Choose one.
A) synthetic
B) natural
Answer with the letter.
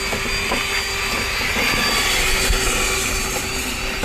B